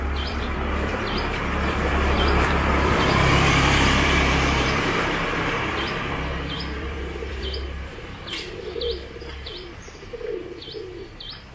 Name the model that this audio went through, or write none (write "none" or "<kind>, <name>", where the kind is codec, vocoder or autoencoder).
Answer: vocoder, BigVGAN v2